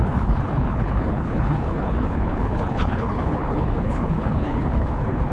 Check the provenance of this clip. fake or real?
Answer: fake